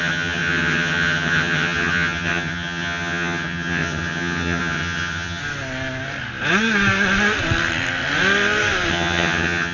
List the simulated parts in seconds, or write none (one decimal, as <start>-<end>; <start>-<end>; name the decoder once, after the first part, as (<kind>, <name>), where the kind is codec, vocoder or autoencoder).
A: 0.0-5.4 (vocoder, HiFi-GAN); 8.9-9.7